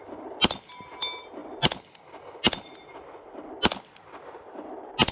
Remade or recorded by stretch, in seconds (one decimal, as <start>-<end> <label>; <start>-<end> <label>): 0.0-5.1 recorded